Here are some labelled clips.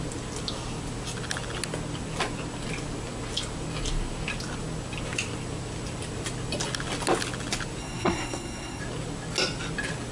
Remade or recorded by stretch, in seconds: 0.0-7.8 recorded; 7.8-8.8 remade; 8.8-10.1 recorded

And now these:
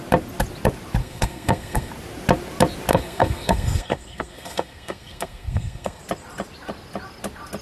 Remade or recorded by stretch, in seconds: 0.0-1.0 recorded; 1.0-1.9 remade; 1.9-2.9 recorded; 2.9-6.0 remade; 6.0-7.6 recorded

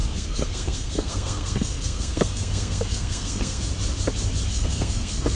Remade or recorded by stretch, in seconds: 0.0-3.7 remade; 3.7-4.5 recorded; 4.5-5.4 remade

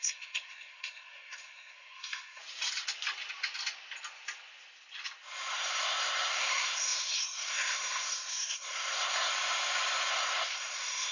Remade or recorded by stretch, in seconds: 0.0-2.4 remade; 2.4-5.5 recorded; 5.5-9.3 remade; 9.3-10.1 recorded; 10.1-11.1 remade

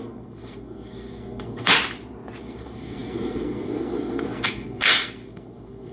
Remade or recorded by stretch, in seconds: 0.0-1.7 remade; 1.7-2.4 recorded; 2.4-5.9 remade

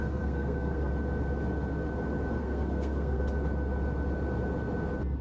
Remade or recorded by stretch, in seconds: 0.0-0.9 remade; 0.9-2.4 recorded; 2.4-3.2 remade; 3.2-5.2 recorded

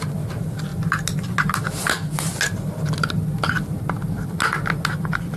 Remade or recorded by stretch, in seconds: 0.0-5.4 recorded

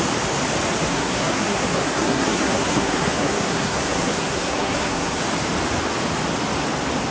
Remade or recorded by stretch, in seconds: 0.0-0.9 recorded; 0.9-5.2 remade; 5.2-7.1 recorded